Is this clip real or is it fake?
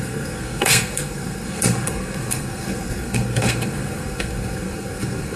fake